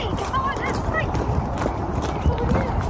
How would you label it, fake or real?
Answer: fake